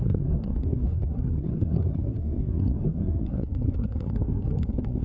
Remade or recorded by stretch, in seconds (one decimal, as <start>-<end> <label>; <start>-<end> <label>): 0.0-5.0 remade